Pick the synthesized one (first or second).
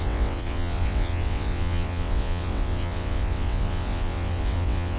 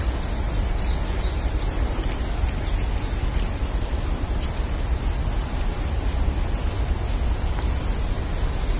first